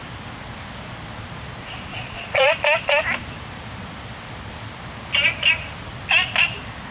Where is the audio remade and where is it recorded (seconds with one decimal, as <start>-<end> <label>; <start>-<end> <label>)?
0.0-1.9 recorded; 1.9-2.5 remade; 2.5-6.9 recorded